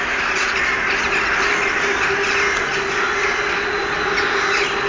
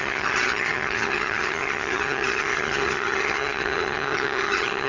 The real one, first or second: first